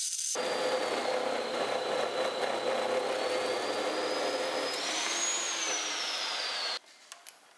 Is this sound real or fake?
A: real